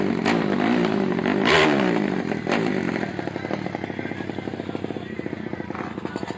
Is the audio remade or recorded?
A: recorded